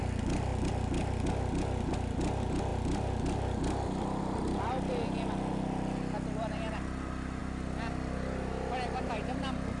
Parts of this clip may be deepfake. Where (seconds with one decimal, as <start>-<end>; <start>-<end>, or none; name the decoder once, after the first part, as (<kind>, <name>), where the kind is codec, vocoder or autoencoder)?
none